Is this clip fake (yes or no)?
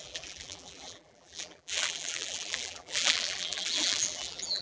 yes